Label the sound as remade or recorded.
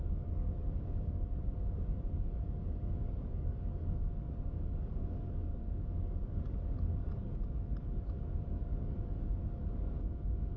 remade